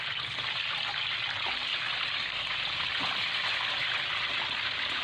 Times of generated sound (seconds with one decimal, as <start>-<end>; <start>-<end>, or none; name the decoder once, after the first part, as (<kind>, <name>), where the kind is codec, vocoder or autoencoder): 1.7-4.3 (vocoder, BigVGAN v2)